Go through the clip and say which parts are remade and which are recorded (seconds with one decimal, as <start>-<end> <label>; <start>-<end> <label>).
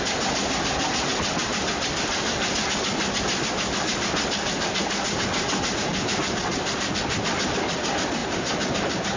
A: 0.0-9.2 recorded